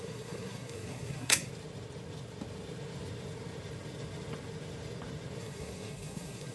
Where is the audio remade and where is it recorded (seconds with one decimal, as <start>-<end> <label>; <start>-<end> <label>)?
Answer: 0.0-1.5 remade; 1.5-5.4 recorded; 5.4-6.5 remade